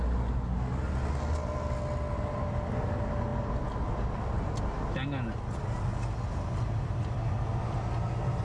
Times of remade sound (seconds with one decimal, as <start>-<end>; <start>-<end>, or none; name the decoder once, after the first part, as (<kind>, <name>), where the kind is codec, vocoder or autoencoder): none